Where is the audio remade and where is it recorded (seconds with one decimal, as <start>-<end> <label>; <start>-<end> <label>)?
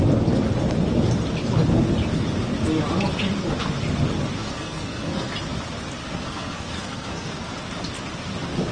0.0-4.4 recorded; 4.4-5.3 remade; 5.3-6.0 recorded; 6.0-7.3 remade; 7.3-8.7 recorded